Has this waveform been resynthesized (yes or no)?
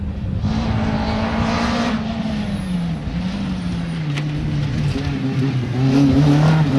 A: no